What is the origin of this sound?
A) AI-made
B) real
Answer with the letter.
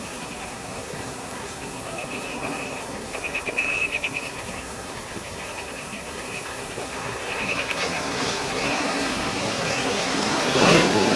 A